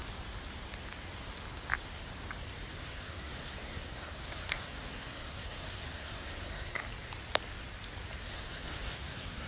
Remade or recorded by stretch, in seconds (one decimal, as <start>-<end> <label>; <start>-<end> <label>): 0.0-2.7 recorded; 2.7-6.8 remade; 6.8-8.2 recorded; 8.2-9.5 remade